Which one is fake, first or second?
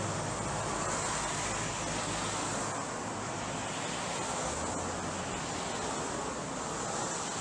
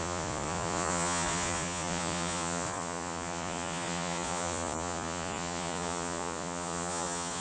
second